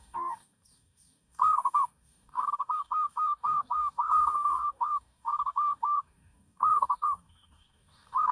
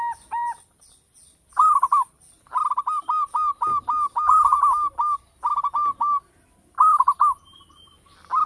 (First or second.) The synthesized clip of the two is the first